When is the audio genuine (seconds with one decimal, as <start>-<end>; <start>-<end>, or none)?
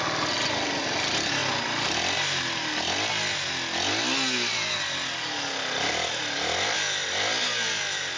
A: 0.0-8.2